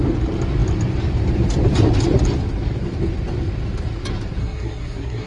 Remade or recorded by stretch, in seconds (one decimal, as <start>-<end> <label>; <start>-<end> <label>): 0.0-4.4 recorded; 4.4-5.3 remade